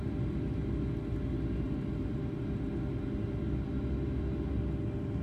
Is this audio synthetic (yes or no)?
no